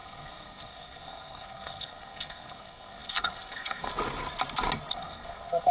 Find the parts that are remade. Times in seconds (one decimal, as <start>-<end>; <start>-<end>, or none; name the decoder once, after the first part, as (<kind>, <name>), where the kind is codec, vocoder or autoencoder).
0.0-3.9 (codec, SNAC); 4.9-5.7